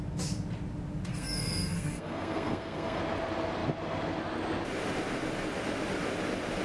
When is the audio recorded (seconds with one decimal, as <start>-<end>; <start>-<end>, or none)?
0.0-1.1; 3.0-6.6